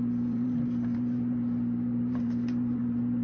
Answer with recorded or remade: remade